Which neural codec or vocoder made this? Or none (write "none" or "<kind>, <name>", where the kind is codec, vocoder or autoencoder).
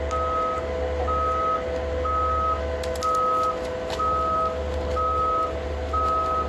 none